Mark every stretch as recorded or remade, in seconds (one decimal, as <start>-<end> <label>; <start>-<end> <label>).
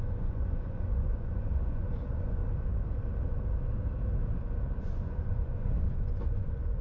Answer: 0.0-2.4 remade; 2.4-4.8 recorded; 4.8-6.8 remade